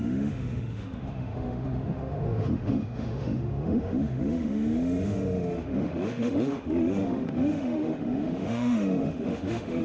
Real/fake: fake